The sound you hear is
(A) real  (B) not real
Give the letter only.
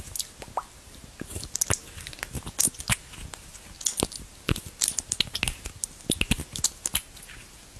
A